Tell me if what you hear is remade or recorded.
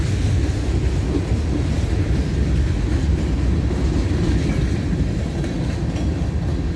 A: recorded